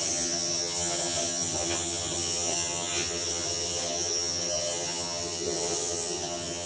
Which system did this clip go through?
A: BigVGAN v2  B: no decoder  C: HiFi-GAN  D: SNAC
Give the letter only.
C